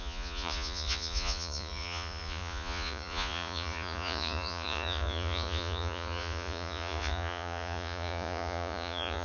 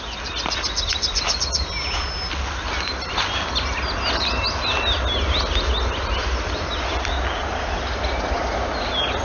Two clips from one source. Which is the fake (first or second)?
first